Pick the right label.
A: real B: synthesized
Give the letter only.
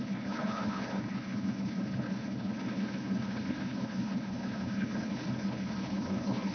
B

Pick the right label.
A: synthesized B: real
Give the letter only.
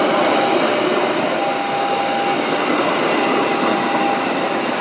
B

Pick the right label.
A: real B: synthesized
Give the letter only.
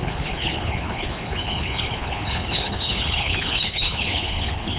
B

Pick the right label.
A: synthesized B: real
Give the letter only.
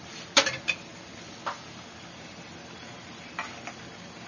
B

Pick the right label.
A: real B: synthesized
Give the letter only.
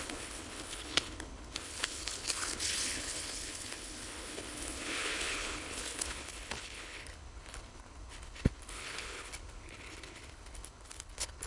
B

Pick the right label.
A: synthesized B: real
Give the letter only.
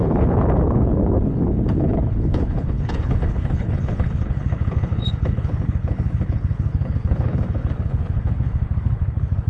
A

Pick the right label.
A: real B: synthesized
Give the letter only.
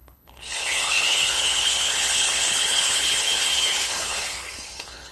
B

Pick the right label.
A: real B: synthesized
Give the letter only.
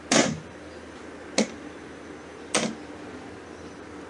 A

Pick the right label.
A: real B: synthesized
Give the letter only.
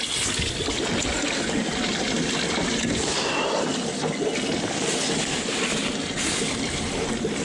A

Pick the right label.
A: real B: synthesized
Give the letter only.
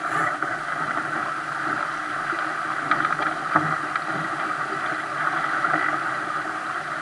A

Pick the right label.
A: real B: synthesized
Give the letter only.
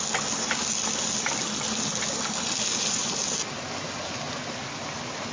A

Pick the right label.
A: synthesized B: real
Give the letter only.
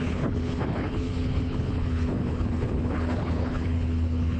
A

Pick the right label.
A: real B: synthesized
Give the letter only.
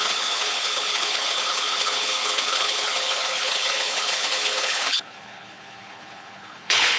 B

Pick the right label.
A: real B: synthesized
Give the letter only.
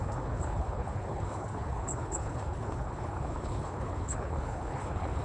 B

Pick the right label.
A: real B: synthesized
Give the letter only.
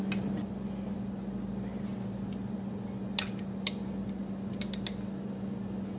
A